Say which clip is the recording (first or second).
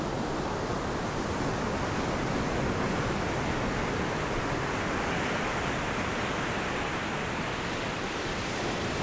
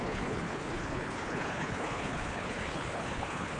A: first